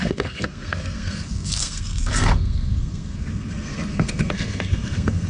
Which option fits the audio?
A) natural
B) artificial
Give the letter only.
B